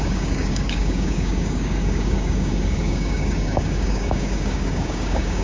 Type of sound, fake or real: fake